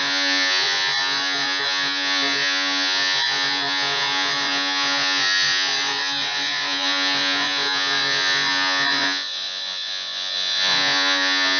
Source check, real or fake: fake